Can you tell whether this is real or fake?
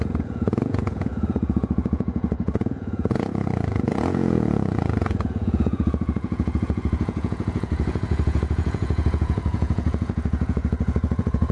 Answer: fake